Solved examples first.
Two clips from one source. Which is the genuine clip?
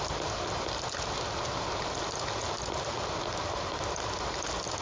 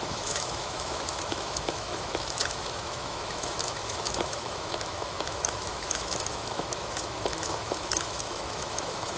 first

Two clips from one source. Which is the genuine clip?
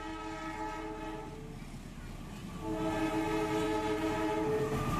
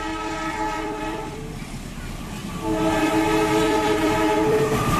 first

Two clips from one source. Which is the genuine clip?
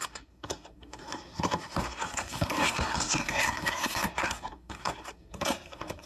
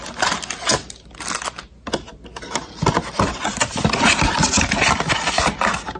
second